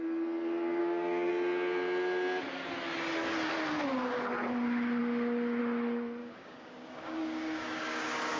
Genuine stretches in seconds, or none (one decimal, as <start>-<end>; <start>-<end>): 0.0-0.8; 1.3-6.2